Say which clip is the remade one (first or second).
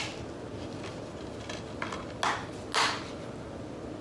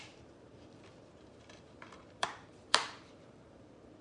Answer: second